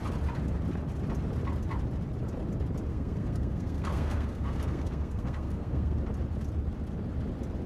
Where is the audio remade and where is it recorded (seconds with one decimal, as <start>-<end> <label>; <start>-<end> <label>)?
0.0-2.9 recorded; 2.9-6.0 remade; 6.0-7.7 recorded